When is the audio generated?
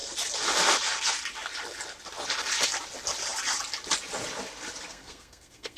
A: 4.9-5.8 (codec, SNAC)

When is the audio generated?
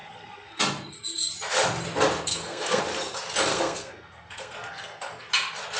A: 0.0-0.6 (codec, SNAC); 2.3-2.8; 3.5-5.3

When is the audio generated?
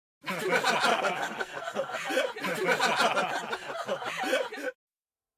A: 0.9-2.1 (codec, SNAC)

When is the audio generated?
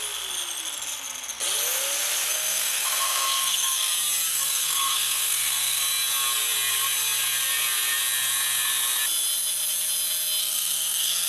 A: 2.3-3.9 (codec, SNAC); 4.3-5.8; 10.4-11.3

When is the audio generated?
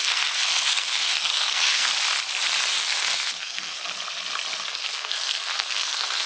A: 0.0-1.9 (codec, SNAC); 2.7-3.9; 4.7-6.3